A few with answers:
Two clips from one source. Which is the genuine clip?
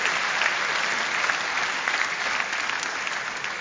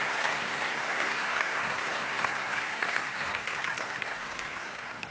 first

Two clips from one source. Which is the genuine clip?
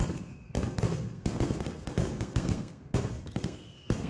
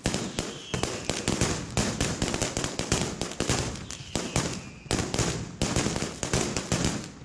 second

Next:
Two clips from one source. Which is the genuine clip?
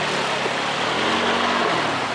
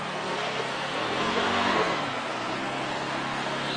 first